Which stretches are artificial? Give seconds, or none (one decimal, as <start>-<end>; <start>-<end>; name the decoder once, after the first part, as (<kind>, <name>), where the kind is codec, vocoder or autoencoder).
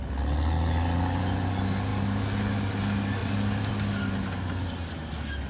3.2-3.7 (vocoder, BigVGAN v2)